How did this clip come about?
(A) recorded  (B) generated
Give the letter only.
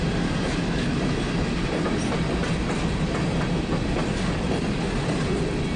A